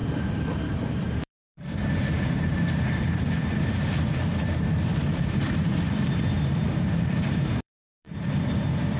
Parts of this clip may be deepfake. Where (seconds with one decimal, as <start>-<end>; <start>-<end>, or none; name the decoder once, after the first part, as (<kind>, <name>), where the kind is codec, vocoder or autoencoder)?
0.0-3.2 (vocoder, BigVGAN v2); 4.3-8.1

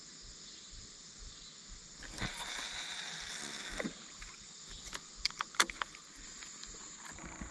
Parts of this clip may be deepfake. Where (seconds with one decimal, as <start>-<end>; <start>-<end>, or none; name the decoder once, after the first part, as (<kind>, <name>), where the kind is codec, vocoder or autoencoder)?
none

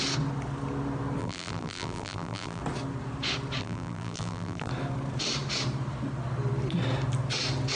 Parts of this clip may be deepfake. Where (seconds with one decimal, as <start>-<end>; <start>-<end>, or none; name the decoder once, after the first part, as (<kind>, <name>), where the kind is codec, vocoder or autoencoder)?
1.2-2.6 (vocoder, BigVGAN v2); 3.6-4.7

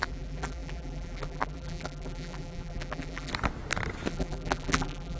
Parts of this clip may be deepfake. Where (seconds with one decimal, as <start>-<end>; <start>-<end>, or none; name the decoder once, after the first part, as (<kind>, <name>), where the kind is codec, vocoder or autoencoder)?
0.0-3.3 (vocoder, BigVGAN v2); 4.1-5.2

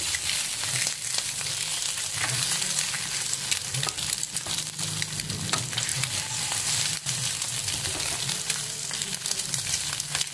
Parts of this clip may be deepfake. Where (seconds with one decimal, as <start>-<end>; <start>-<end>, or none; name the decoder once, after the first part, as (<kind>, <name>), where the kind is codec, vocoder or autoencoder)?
0.0-1.7 (vocoder, BigVGAN v2); 2.9-10.3

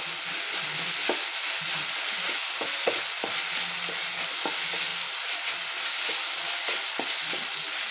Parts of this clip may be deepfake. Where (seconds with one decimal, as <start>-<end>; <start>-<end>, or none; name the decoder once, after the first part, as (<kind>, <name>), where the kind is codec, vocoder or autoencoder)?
none

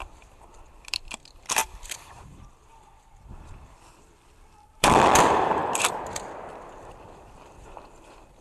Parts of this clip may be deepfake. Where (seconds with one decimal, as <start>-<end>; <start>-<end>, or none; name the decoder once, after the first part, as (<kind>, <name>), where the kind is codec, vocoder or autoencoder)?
0.0-5.6 (vocoder, BigVGAN v2); 6.8-8.4

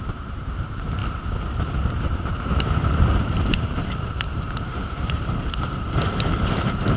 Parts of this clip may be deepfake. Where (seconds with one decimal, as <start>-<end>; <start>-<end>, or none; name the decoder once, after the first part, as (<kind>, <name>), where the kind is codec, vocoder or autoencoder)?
0.0-1.0 (vocoder, BigVGAN v2); 1.7-7.0